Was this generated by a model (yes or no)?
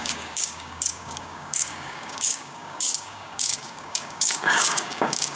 yes